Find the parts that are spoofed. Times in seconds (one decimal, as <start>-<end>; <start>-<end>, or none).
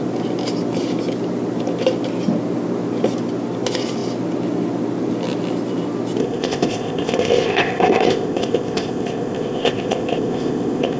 6.2-11.0